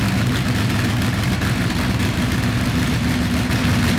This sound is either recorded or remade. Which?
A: recorded